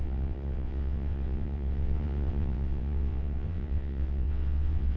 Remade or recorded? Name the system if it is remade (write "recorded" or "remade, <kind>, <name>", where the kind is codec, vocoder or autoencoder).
remade, vocoder, WaveNeXt